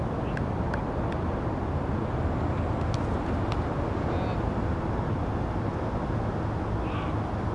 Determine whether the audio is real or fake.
real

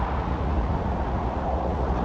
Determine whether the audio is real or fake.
fake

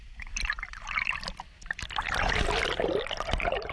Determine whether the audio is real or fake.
real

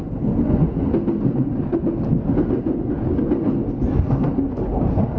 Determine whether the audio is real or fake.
real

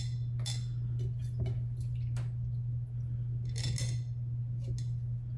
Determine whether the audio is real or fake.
real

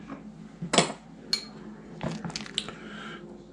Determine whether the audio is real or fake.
real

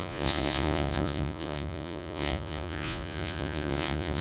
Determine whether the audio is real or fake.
fake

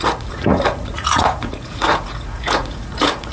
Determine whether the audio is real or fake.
fake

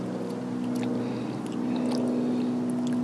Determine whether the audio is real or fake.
real